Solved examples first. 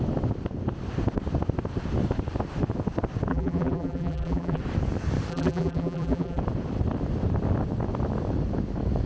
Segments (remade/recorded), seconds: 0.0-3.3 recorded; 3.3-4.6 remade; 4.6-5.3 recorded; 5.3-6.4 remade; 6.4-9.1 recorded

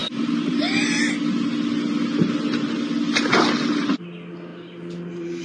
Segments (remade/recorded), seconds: 0.0-0.6 remade; 0.6-4.5 recorded; 4.5-5.4 remade

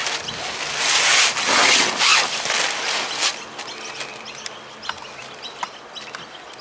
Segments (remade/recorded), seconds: 0.0-5.2 recorded; 5.2-5.7 remade; 5.7-6.6 recorded

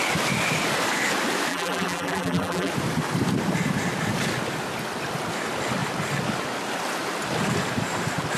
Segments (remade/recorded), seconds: 0.0-1.5 recorded; 1.5-2.7 remade; 2.7-8.4 recorded